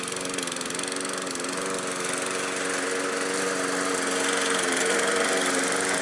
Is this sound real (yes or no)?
yes